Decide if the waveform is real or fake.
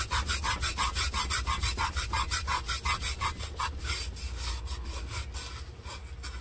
real